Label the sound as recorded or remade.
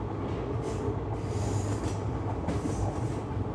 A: recorded